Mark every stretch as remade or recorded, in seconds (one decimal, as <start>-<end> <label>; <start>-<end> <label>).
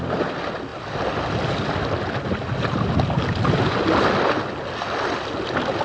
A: 0.0-5.8 recorded